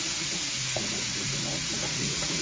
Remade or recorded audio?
remade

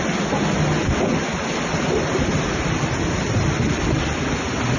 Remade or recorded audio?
recorded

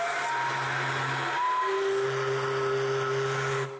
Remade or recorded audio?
recorded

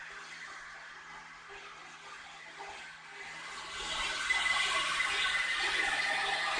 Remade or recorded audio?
recorded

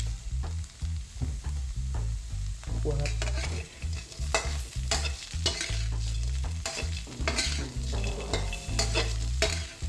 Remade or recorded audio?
recorded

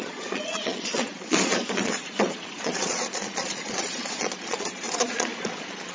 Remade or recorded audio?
remade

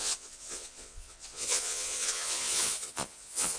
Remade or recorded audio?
remade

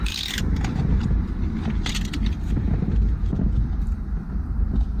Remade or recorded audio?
recorded